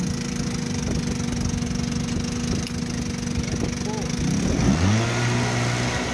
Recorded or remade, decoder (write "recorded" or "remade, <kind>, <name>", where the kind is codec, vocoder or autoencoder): recorded